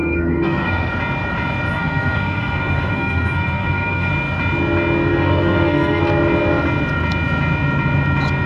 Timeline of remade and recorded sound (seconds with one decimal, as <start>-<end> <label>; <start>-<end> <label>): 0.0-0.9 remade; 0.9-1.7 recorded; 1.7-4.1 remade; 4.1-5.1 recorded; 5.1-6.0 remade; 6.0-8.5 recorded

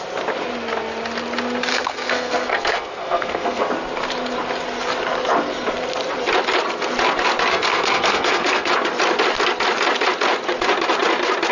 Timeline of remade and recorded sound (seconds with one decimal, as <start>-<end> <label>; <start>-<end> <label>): 0.0-1.7 recorded; 1.7-3.6 remade; 3.6-7.5 recorded; 7.5-8.7 remade; 8.7-11.5 recorded

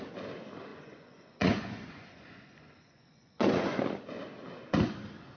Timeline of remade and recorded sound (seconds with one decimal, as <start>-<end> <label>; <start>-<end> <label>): 0.0-0.7 recorded; 0.7-3.8 remade; 3.8-5.4 recorded